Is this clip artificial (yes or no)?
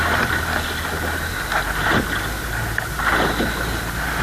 no